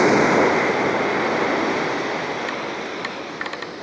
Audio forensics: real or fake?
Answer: real